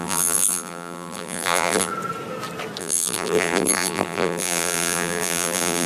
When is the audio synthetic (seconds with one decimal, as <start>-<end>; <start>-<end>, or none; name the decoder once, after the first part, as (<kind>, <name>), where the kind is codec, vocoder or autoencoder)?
0.0-1.9 (vocoder, BigVGAN v2); 2.8-5.9